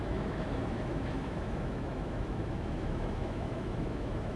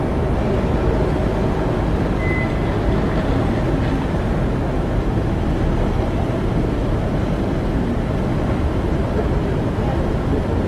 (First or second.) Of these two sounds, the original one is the second